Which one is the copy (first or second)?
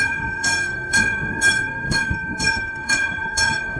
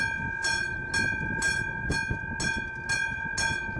first